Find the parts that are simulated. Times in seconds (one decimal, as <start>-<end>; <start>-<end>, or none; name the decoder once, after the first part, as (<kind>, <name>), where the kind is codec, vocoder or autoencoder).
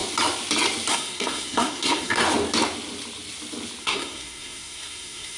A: 0.9-2.2 (codec, SNAC); 3.8-5.4